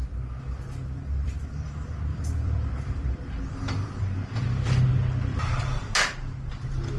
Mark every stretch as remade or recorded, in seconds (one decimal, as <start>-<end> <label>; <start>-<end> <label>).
0.0-1.7 remade; 1.7-2.1 recorded; 2.1-4.8 remade; 4.8-5.3 recorded; 5.3-5.8 remade; 5.8-7.0 recorded